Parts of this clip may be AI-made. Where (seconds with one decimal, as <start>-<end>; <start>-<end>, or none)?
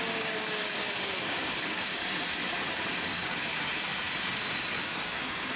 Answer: 0.0-2.0; 3.0-3.5; 4.8-5.6